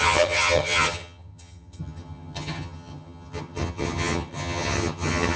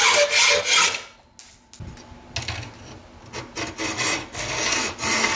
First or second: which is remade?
first